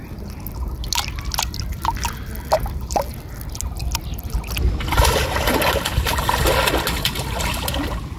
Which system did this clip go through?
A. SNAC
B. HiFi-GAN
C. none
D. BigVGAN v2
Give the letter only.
C